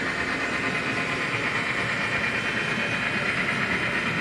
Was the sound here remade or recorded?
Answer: recorded